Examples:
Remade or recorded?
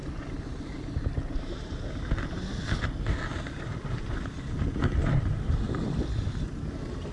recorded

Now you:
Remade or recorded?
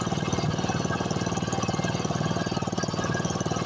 recorded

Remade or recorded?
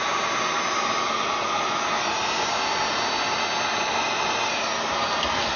recorded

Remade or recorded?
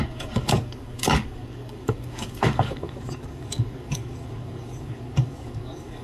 remade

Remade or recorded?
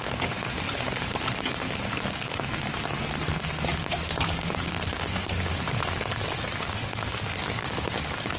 remade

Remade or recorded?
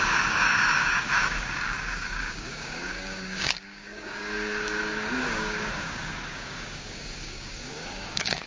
remade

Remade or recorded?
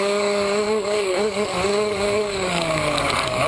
remade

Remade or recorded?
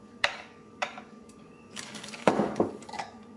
remade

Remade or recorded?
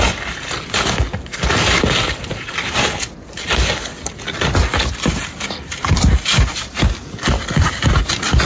recorded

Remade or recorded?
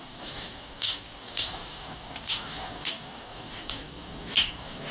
remade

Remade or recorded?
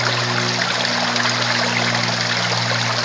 recorded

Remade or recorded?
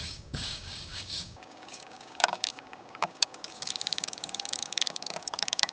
remade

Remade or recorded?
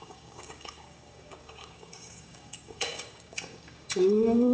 remade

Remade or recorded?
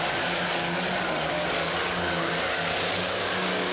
remade